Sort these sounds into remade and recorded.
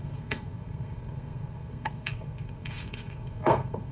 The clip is remade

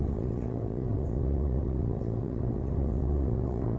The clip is remade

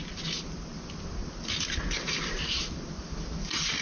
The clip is recorded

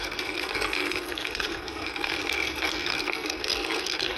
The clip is remade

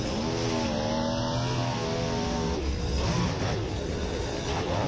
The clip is recorded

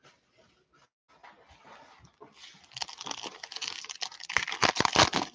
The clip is recorded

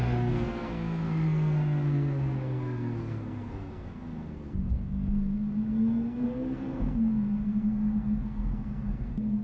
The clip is remade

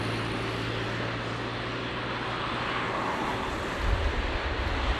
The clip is recorded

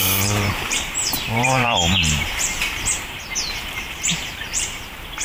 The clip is remade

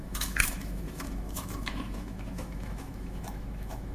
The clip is remade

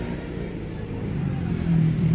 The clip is remade